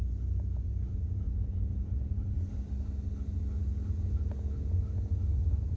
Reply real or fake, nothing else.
real